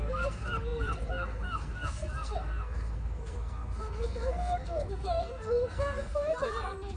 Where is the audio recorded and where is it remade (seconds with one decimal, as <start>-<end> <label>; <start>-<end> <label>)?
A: 0.0-7.0 remade